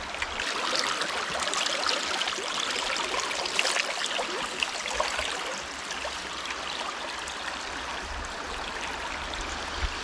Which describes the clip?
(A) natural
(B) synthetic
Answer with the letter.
A